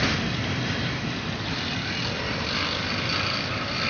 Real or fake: real